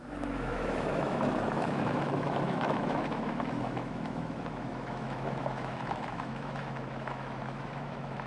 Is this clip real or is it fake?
fake